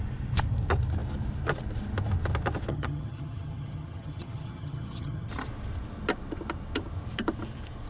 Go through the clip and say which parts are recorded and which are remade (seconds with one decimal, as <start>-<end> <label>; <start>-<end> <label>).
0.0-2.7 recorded; 2.7-5.3 remade; 5.3-7.9 recorded

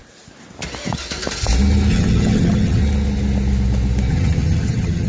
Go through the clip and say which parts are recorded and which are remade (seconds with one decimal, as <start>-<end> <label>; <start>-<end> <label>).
0.0-1.9 recorded; 1.9-2.8 remade; 2.8-4.1 recorded; 4.1-5.1 remade